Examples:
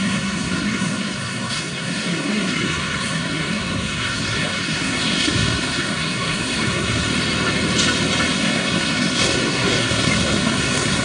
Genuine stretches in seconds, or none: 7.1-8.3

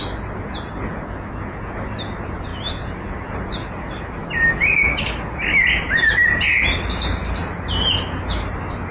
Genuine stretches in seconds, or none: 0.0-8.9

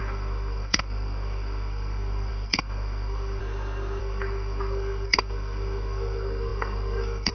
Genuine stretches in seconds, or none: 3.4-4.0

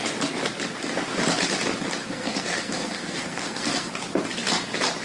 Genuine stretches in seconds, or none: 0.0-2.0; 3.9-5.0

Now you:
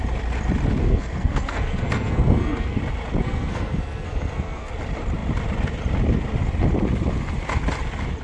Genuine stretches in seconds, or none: 0.0-0.8; 2.8-3.2; 4.7-8.2

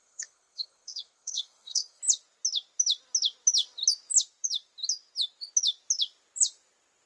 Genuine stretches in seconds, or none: 2.0-7.1

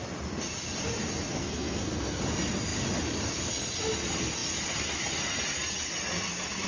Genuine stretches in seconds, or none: 0.0-1.4; 2.2-6.7

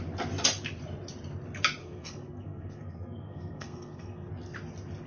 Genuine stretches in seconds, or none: 0.0-1.8; 4.3-5.1